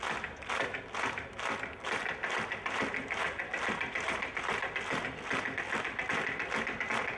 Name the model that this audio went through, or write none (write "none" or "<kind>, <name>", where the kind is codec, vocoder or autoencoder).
none